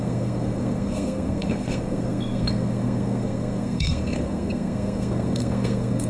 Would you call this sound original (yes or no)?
no